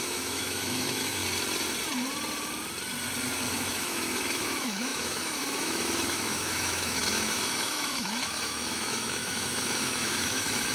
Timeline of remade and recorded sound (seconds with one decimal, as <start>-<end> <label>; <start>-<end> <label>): 0.0-1.2 remade; 1.2-3.5 recorded; 3.5-10.7 remade